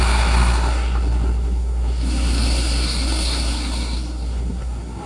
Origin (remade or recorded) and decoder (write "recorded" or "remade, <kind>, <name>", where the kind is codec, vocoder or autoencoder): remade, codec, SNAC